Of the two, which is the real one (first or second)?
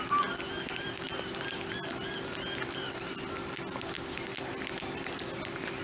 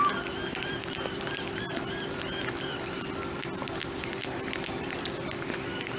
first